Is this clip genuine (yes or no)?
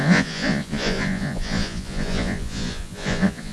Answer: no